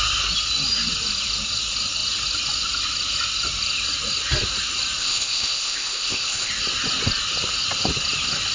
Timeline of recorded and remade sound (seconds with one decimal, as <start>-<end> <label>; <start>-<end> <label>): 0.0-5.0 recorded; 5.0-6.5 remade; 6.5-8.5 recorded

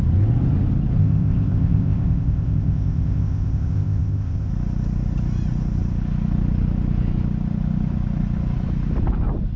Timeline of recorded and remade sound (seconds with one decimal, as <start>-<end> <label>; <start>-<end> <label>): 0.0-1.0 recorded; 1.0-4.5 remade; 4.5-9.6 recorded

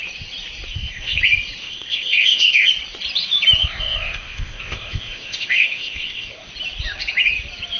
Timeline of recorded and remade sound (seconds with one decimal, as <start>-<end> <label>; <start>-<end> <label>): 0.0-0.7 recorded; 0.7-1.2 remade; 1.2-1.6 recorded; 1.6-2.7 remade; 2.7-3.6 recorded; 3.6-6.5 remade; 6.5-7.8 recorded

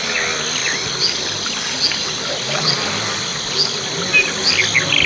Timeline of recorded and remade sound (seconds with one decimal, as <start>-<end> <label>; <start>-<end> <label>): 0.0-5.1 recorded

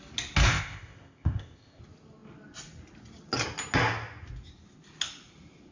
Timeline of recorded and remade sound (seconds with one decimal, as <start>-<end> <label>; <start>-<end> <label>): 0.0-0.5 recorded; 0.5-1.8 remade; 1.8-5.7 recorded

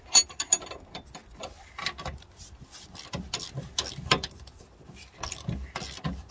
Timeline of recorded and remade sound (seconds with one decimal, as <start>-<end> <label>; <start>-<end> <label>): 0.0-6.3 recorded

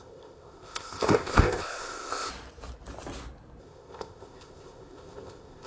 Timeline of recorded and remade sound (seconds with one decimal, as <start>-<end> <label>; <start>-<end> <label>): 0.0-2.3 remade; 2.3-3.6 recorded; 3.6-5.7 remade

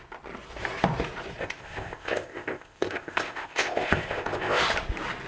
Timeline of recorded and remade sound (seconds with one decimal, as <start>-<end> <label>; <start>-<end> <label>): 0.0-1.4 recorded; 1.4-4.6 remade; 4.6-5.3 recorded